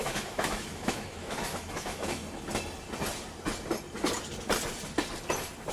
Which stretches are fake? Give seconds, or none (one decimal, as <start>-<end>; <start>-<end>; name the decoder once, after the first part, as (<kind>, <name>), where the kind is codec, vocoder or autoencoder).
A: 0.0-2.2 (autoencoder, DAC-VAE)